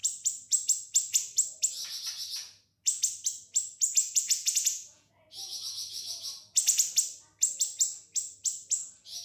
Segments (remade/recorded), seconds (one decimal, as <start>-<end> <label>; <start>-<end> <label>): 0.0-4.0 recorded; 4.0-5.1 remade; 5.1-9.2 recorded